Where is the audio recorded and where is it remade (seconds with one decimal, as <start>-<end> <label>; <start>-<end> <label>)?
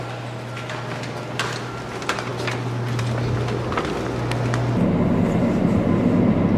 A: 0.0-6.6 recorded